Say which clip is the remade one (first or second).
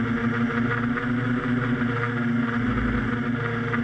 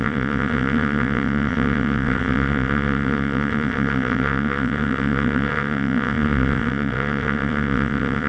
second